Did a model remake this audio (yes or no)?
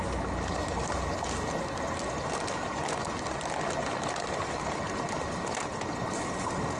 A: no